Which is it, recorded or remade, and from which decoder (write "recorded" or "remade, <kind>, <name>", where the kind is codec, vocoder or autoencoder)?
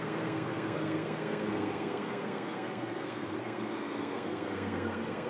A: remade, codec, SNAC